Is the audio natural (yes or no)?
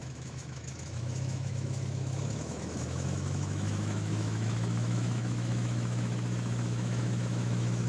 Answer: no